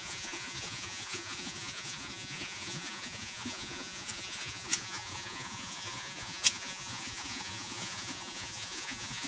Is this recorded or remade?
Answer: remade